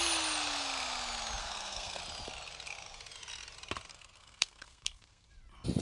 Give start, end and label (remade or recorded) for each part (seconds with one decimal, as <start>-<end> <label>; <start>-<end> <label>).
0.0-1.4 recorded; 1.4-2.0 remade; 2.0-3.9 recorded; 3.9-5.3 remade; 5.3-5.8 recorded